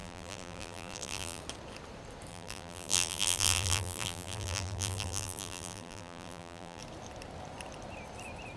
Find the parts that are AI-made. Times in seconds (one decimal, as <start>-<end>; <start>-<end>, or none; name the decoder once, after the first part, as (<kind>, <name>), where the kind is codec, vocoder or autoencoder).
0.0-1.4 (vocoder, BigVGAN v2); 2.3-6.8